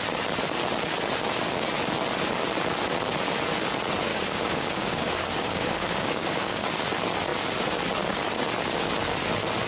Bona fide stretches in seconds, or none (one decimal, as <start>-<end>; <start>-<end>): 0.0-4.1; 6.7-9.7